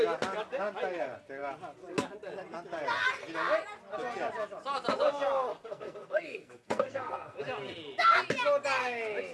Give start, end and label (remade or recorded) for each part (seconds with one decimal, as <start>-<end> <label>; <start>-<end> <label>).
0.0-5.5 recorded; 5.5-7.4 remade; 7.4-9.3 recorded

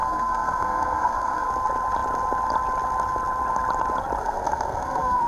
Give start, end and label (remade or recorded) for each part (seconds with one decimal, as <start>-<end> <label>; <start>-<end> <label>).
0.0-1.5 remade; 1.5-4.2 recorded; 4.2-5.3 remade

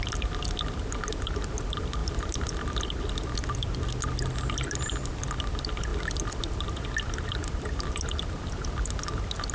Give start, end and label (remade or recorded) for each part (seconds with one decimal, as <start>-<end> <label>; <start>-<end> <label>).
0.0-9.5 recorded

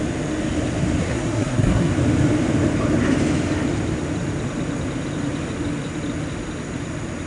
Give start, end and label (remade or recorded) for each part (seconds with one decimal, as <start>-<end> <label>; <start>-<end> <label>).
0.0-1.0 recorded; 1.0-1.9 remade; 1.9-7.3 recorded

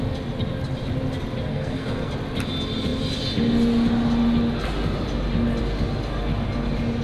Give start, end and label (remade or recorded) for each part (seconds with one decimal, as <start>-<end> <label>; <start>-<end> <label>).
0.0-1.5 recorded; 1.5-2.1 remade; 2.1-7.0 recorded

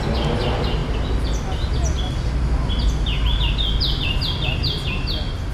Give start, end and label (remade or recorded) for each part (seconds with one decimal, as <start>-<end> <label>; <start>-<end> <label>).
0.0-5.5 recorded

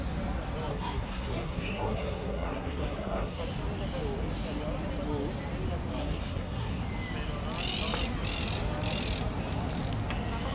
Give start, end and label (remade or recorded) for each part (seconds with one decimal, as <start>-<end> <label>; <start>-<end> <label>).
0.0-0.7 recorded; 0.7-3.4 remade; 3.4-6.0 recorded; 6.0-6.8 remade; 6.8-10.5 recorded

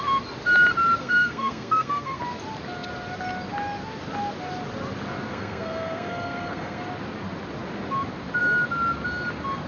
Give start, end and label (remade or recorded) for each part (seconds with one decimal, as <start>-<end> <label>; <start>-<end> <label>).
0.0-1.0 recorded; 1.0-2.2 remade; 2.2-5.3 recorded; 5.3-6.8 remade; 6.8-9.7 recorded